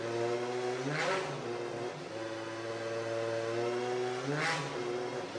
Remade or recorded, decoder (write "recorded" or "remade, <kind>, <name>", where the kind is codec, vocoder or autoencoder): recorded